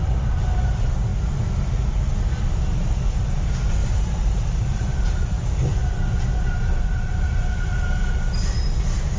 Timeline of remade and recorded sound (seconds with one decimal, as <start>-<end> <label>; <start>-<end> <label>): 0.0-3.8 recorded; 3.8-5.5 remade; 5.5-9.2 recorded

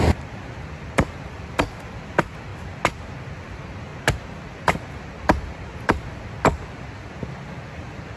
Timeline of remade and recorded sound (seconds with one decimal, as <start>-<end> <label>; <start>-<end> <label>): 0.0-8.2 recorded

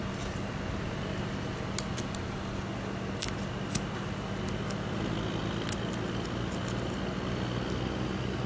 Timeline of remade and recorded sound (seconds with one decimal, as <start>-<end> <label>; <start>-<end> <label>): 0.0-8.5 recorded

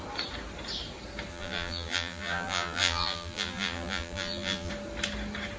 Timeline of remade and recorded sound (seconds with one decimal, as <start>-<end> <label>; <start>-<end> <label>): 0.0-1.3 recorded; 1.3-4.7 remade; 4.7-5.6 recorded

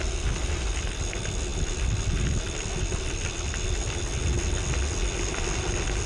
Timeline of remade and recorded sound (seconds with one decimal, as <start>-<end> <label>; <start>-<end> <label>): 0.0-6.1 recorded

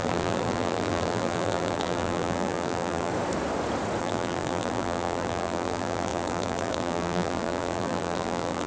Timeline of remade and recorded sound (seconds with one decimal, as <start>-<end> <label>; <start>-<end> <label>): 0.0-3.1 remade; 3.1-4.0 recorded; 4.0-8.7 remade

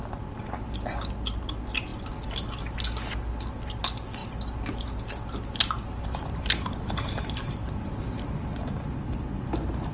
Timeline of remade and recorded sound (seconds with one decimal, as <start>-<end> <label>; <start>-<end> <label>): 0.0-9.9 recorded